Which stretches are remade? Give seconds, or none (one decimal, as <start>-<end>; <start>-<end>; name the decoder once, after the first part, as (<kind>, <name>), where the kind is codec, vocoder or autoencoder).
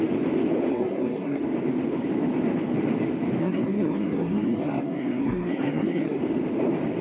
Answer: 0.7-1.4 (codec, SNAC); 3.4-6.2